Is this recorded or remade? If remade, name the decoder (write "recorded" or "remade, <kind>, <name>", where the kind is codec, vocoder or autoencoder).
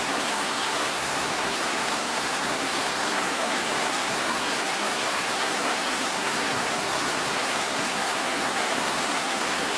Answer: remade, codec, SNAC